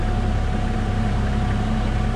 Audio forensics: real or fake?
real